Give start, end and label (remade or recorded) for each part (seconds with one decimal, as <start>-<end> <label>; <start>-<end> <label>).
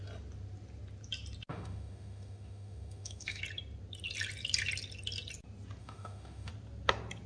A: 0.0-1.5 recorded; 1.5-3.4 remade; 3.4-5.8 recorded; 5.8-6.5 remade; 6.5-7.3 recorded